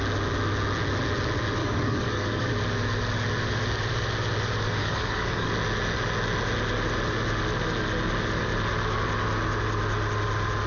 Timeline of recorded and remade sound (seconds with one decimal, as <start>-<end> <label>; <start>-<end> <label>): 0.0-1.6 recorded; 1.6-2.5 remade; 2.5-4.8 recorded; 4.8-5.5 remade; 5.5-10.7 recorded